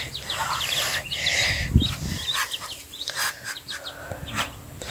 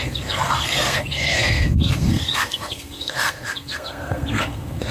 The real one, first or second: first